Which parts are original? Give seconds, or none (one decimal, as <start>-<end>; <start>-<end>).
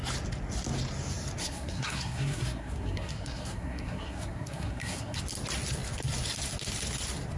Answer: 0.0-1.4; 5.2-7.4